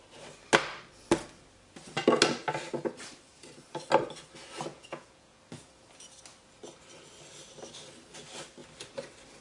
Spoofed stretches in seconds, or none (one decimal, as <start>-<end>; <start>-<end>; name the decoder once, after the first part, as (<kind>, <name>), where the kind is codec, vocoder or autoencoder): 4.7-5.4 (vocoder, Vocos)